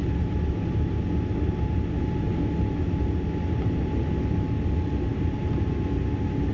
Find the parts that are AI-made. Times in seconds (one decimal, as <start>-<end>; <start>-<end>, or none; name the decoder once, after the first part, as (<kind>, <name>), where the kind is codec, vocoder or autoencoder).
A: none